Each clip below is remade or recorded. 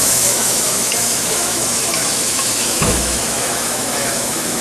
remade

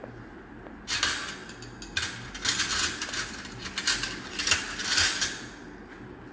recorded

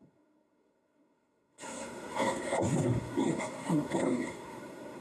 remade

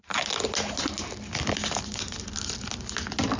recorded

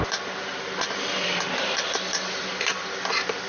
recorded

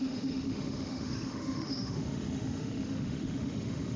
remade